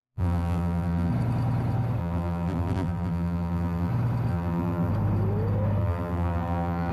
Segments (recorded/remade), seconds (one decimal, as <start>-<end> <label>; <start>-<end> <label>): 0.0-1.1 remade; 1.1-2.0 recorded; 2.0-3.9 remade; 3.9-4.3 recorded; 4.3-4.9 remade; 4.9-5.8 recorded; 5.8-6.9 remade